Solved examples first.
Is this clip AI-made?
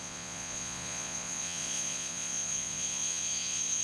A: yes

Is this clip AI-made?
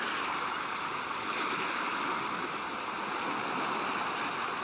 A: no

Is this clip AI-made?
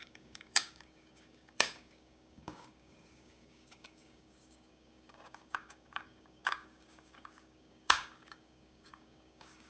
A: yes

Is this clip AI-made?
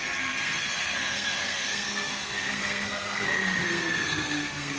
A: yes